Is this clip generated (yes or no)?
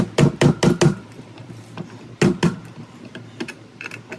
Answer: no